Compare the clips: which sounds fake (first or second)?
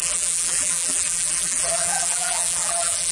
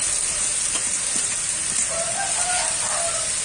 first